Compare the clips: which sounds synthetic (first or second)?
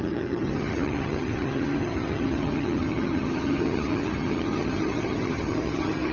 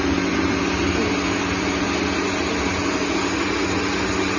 first